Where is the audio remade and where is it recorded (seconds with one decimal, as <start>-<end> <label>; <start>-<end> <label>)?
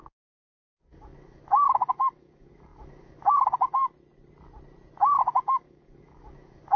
0.0-3.8 remade; 3.8-5.2 recorded; 5.2-6.8 remade